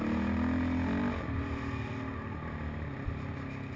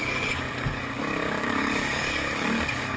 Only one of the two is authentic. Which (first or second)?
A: first